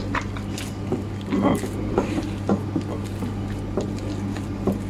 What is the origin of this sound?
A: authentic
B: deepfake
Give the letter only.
A